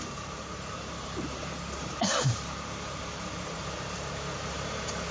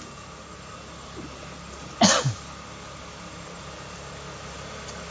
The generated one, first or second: first